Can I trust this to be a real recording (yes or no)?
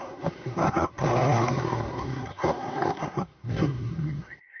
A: no